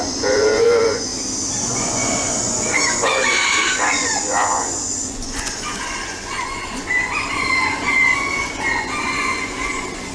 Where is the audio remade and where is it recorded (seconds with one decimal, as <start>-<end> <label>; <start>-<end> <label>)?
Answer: 0.0-1.1 remade; 1.1-1.6 recorded; 1.6-10.1 remade

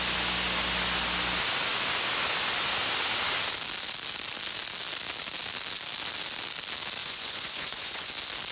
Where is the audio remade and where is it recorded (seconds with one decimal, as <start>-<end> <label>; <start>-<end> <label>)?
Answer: 0.0-7.0 recorded; 7.0-8.1 remade; 8.1-8.5 recorded

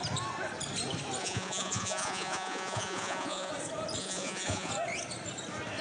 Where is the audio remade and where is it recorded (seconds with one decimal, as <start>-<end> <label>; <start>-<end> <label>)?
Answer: 0.0-1.2 recorded; 1.2-3.5 remade; 3.5-4.0 recorded; 4.0-4.7 remade; 4.7-5.8 recorded

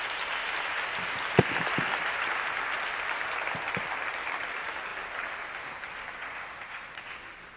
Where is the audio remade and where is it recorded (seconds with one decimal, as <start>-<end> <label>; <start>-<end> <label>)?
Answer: 0.0-6.2 recorded; 6.2-7.1 remade; 7.1-7.6 recorded

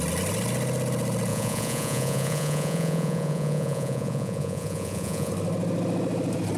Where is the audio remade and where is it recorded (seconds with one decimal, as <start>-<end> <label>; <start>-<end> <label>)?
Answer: 0.0-1.3 recorded; 1.3-5.3 remade; 5.3-6.6 recorded

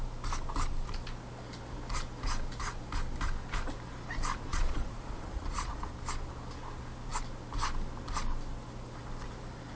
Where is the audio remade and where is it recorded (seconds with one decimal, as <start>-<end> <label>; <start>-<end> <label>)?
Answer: 0.0-4.5 recorded; 4.5-5.9 remade; 5.9-9.8 recorded